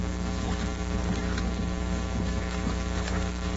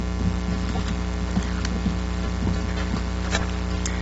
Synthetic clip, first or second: first